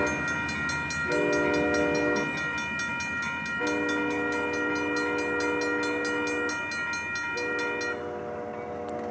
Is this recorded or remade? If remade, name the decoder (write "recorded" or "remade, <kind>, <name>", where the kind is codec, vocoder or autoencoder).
recorded